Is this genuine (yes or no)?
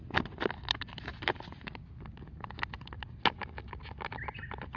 yes